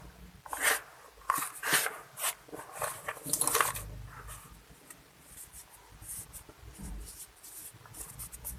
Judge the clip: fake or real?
real